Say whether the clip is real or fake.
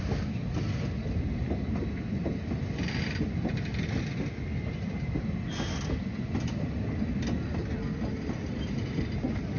real